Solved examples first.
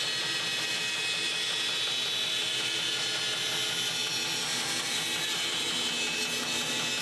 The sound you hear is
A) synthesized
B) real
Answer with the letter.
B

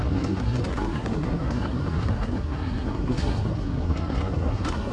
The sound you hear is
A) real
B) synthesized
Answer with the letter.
B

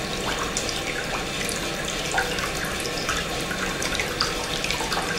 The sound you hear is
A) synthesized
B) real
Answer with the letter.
A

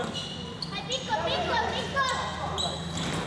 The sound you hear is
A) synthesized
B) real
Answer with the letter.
B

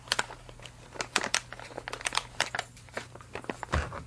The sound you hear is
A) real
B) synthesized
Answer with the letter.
A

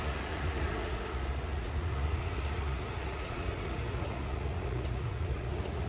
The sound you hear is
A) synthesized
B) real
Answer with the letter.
A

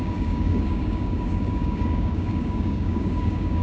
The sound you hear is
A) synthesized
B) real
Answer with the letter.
A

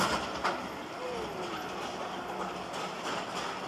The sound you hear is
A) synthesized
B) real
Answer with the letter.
B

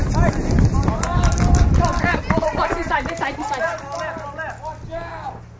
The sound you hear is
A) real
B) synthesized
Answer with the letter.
A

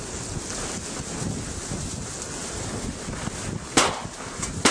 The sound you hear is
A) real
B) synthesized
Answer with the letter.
A